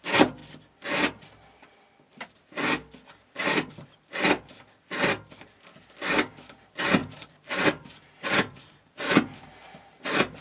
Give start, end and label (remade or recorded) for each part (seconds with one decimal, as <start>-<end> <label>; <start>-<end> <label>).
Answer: 0.0-7.0 recorded; 7.0-10.0 remade; 10.0-10.4 recorded